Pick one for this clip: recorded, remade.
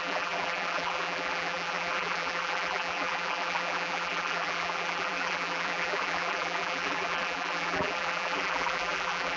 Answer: remade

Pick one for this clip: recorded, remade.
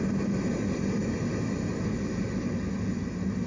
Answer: recorded